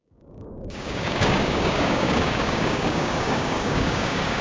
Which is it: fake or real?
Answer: fake